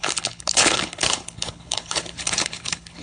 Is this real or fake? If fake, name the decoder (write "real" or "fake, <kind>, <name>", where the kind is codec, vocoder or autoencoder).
fake, codec, HILCodec